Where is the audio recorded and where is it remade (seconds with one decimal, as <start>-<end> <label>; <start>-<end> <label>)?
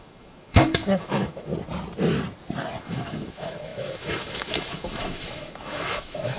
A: 0.0-1.5 remade; 1.5-2.8 recorded; 2.8-6.4 remade